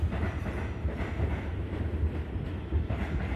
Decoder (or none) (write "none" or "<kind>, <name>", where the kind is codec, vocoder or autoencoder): vocoder, BigVGAN v2